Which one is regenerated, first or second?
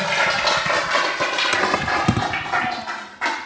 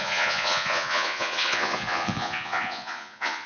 second